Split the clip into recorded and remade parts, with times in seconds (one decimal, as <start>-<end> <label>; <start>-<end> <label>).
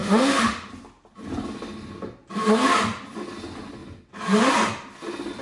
0.0-0.7 remade; 0.7-5.4 recorded